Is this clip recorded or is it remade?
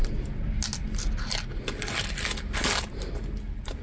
recorded